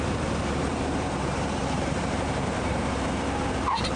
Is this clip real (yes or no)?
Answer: no